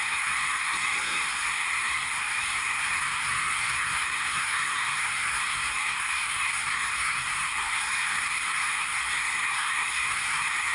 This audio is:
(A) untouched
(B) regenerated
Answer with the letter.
B